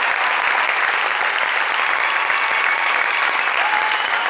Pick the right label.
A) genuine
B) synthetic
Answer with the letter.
A